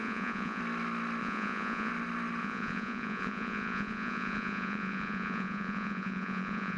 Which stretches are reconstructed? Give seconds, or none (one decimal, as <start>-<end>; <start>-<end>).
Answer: 0.0-0.6; 1.2-1.9; 2.4-6.8